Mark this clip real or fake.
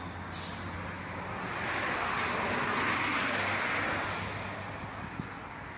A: real